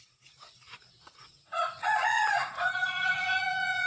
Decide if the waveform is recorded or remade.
remade